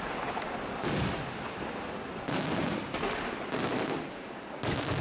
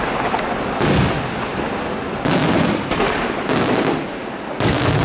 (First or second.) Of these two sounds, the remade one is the first